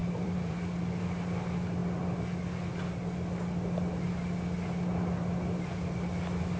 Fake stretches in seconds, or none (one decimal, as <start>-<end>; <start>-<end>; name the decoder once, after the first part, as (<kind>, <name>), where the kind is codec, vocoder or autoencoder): 0.0-0.8 (vocoder, BigVGAN v2)

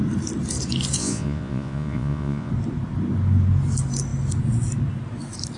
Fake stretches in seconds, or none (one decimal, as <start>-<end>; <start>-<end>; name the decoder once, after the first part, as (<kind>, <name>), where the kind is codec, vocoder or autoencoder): 1.0-2.5 (vocoder, Vocos)

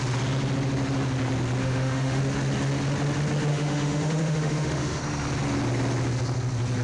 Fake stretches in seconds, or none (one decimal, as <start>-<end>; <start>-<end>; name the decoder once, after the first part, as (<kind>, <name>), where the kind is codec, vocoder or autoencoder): 1.6-2.2 (autoencoder, DAC-VAE); 3.5-5.0

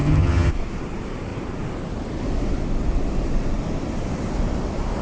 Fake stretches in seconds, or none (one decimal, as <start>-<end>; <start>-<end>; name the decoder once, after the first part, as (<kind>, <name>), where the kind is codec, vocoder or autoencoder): 0.0-0.5 (vocoder, HiFi-GAN)

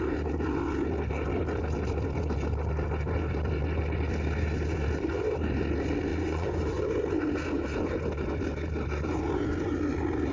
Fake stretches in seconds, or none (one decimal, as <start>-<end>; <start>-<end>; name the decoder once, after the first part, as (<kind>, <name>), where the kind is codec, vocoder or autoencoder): 6.1-6.8 (vocoder, Vocos)

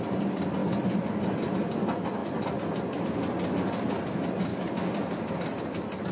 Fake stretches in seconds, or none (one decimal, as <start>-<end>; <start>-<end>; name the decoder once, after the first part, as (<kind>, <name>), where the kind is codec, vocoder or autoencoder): none

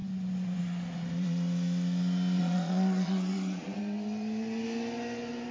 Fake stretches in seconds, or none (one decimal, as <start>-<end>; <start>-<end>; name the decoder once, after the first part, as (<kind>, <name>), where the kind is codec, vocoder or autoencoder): 2.4-3.8 (vocoder, Vocos)